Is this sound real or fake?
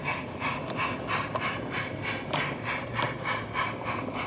real